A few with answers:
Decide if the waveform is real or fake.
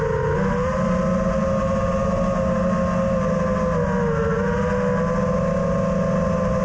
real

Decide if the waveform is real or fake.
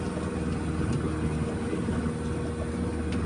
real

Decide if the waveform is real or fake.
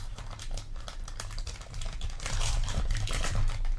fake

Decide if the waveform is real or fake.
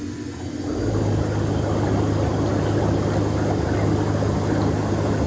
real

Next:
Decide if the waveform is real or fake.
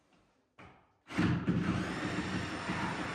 real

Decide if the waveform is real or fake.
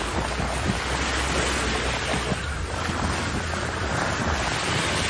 real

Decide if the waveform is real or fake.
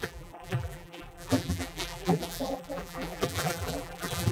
fake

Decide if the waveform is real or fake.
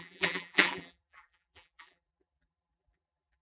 fake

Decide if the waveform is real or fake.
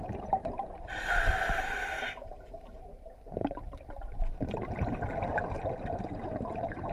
fake